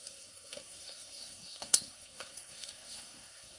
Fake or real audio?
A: fake